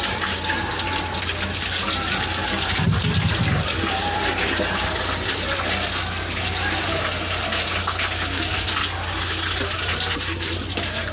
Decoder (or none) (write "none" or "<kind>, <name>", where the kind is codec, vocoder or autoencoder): none